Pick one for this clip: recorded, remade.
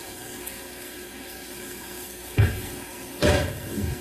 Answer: remade